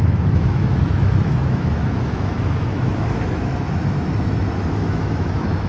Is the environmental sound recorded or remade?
remade